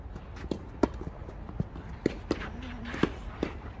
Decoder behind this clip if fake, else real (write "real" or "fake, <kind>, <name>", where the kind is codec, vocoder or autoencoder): real